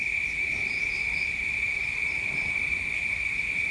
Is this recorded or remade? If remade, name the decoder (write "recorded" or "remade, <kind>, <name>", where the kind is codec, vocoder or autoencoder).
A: remade, vocoder, BigVGAN v2